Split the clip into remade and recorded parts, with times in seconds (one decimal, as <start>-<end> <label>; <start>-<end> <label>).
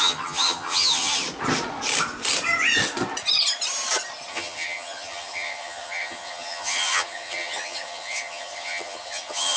0.0-1.2 remade; 1.2-4.3 recorded; 4.3-9.6 remade